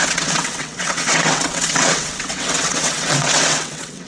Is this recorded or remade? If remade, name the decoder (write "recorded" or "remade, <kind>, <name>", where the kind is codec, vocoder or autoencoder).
remade, vocoder, WaveNeXt